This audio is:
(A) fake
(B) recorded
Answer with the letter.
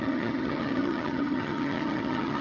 A